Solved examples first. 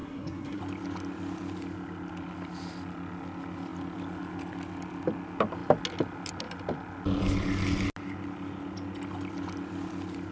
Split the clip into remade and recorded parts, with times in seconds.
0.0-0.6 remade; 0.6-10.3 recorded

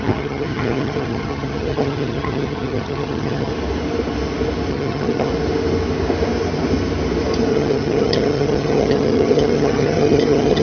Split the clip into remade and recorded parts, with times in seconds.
0.0-3.5 remade; 3.5-4.7 recorded; 4.7-5.3 remade; 5.3-7.5 recorded; 7.5-10.6 remade

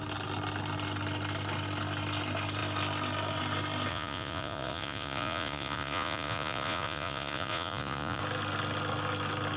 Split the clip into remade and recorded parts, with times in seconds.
0.0-3.9 recorded; 3.9-8.2 remade; 8.2-9.6 recorded